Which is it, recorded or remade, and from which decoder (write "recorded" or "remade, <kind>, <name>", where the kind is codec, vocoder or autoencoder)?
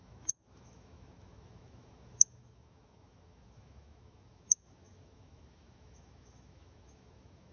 remade, autoencoder, DAC-VAE